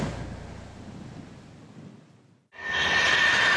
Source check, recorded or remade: recorded